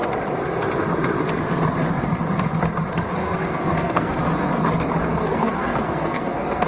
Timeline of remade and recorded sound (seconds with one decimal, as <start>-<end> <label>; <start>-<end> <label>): 0.0-3.2 recorded; 3.2-4.2 remade; 4.2-5.0 recorded; 5.0-6.7 remade